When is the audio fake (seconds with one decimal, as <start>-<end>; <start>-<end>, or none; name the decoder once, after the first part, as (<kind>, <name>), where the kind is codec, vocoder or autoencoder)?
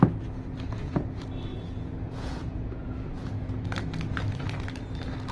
1.5-3.6 (vocoder, Vocos)